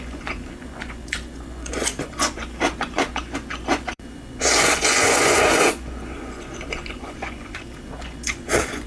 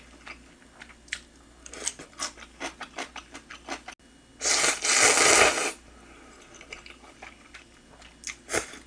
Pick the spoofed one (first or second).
first